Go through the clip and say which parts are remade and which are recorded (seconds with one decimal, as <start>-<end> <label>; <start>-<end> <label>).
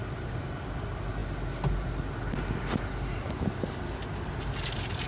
0.0-5.1 recorded